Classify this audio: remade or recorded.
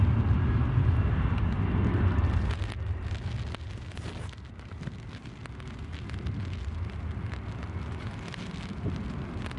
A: recorded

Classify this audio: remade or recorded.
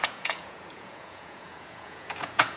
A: remade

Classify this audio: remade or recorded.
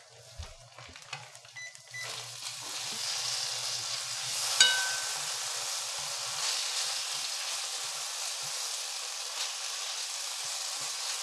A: recorded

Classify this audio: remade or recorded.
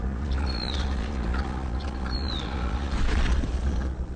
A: remade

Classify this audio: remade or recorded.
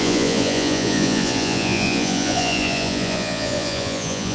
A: remade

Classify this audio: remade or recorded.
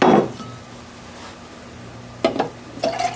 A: recorded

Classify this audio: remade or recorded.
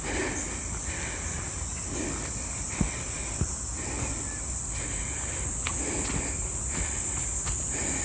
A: recorded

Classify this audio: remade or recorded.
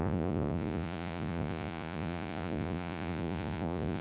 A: remade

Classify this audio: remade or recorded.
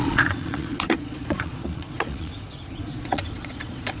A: remade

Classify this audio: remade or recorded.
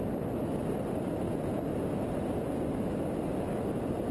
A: recorded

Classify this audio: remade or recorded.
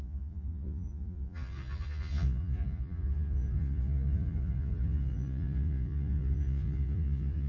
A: remade